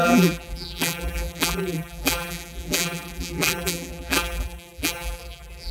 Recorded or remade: remade